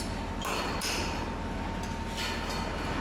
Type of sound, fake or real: real